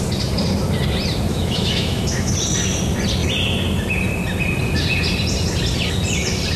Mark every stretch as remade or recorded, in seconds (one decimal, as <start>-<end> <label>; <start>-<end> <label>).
0.0-1.3 recorded; 1.3-2.3 remade; 2.3-6.6 recorded